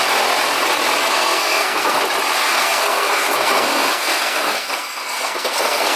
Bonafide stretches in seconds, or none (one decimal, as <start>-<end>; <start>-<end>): 0.0-1.0; 2.0-2.4